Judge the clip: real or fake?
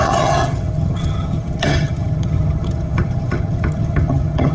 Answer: fake